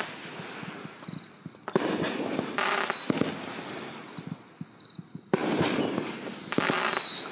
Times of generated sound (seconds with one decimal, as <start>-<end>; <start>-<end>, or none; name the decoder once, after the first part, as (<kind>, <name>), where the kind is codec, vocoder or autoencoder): none